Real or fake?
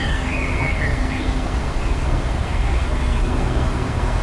fake